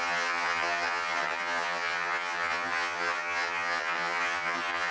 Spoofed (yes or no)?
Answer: yes